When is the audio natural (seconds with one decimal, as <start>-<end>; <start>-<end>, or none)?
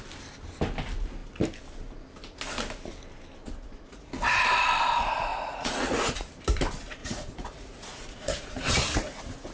0.0-3.4; 4.1-5.3; 6.3-7.0; 8.7-9.5